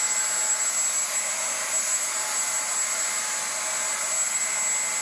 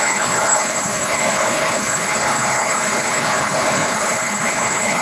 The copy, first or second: second